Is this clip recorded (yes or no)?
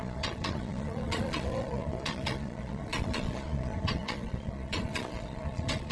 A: no